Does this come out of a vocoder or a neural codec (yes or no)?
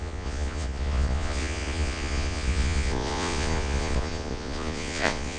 yes